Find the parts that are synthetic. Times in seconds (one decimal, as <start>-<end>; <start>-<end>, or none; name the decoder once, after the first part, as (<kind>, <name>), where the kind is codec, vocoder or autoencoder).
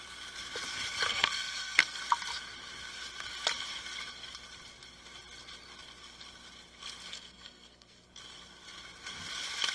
1.1-2.0 (codec, SNAC); 7.1-8.1